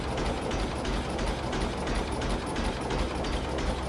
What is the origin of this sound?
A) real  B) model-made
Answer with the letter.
A